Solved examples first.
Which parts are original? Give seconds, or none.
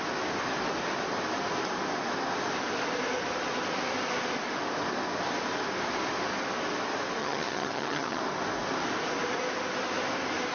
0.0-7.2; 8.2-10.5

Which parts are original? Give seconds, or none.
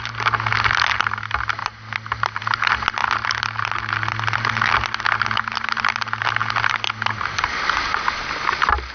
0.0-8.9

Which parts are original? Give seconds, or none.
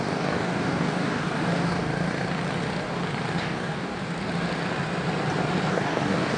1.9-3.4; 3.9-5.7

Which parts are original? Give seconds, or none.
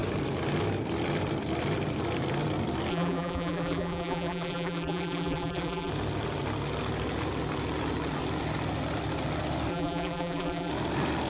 0.0-2.9; 5.9-9.7; 10.7-11.3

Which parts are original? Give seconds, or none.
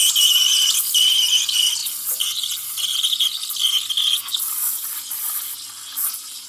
0.0-6.5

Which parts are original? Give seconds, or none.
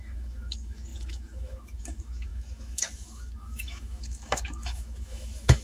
none